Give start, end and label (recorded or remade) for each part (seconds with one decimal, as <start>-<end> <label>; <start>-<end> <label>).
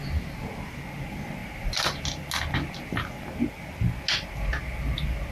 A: 0.0-5.3 recorded